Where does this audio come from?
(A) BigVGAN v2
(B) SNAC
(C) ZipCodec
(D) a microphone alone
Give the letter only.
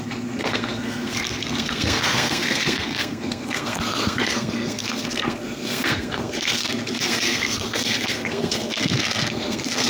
B